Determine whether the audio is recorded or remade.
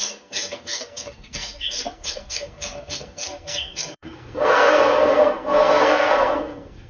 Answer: remade